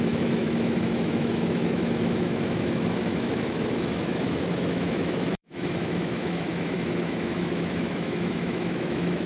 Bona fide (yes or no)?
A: no